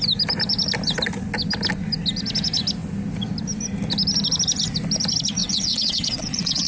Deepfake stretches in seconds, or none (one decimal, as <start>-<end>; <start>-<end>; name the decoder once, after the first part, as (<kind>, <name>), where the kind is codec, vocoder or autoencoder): 5.4-6.7 (vocoder, WaveNeXt)